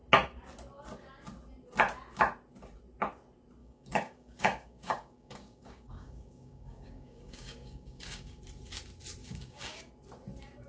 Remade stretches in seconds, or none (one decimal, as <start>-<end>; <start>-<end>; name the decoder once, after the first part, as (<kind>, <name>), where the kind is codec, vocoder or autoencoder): 3.6-8.4 (codec, DAC); 9.2-9.9